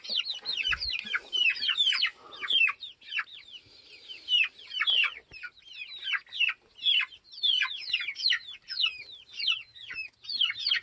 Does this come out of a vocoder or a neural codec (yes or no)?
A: no